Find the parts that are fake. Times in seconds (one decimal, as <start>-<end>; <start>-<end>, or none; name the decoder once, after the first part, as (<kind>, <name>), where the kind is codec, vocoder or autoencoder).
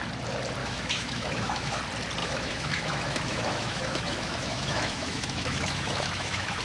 0.6-1.8 (autoencoder, DAC-VAE); 2.2-6.6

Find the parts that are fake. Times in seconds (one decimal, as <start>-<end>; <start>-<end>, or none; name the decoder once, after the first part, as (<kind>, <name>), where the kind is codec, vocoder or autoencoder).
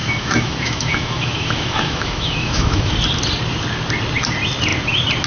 0.0-2.9 (autoencoder, DAC-VAE)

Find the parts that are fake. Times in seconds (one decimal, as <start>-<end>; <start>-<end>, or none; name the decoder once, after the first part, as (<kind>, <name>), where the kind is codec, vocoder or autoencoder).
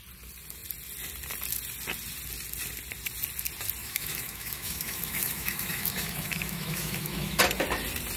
3.8-7.4 (autoencoder, DAC-VAE)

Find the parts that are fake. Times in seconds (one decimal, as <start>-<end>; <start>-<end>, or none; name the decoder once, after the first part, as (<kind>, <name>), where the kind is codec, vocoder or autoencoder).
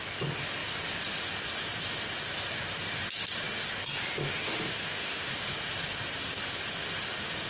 4.2-5.3 (autoencoder, DAC-VAE)